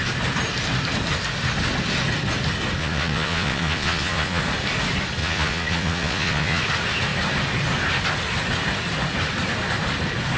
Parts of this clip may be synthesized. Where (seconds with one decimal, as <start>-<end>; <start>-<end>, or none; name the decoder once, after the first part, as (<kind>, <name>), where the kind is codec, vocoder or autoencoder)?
2.8-4.4 (vocoder, Vocos); 5.2-6.6